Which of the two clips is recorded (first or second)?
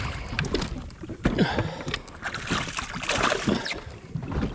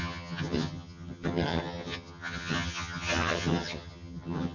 first